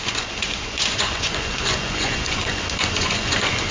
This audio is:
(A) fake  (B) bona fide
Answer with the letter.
A